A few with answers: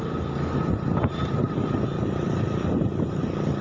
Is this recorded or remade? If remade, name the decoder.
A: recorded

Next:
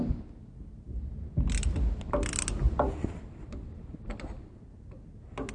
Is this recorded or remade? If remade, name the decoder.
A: recorded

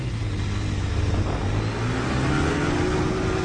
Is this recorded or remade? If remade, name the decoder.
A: recorded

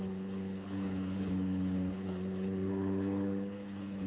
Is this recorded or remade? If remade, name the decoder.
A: remade, codec, HILCodec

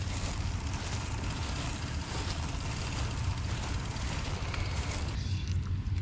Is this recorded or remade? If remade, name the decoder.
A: recorded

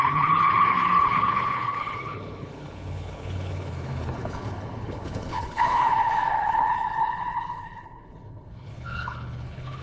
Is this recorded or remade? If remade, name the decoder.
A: remade, codec, HILCodec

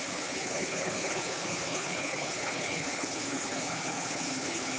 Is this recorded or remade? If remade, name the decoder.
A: remade, codec, HILCodec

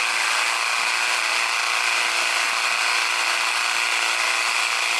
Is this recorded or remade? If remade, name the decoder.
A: recorded